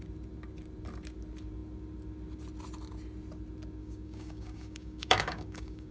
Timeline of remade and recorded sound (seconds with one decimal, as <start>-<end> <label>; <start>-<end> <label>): 0.0-3.8 recorded; 3.8-5.9 remade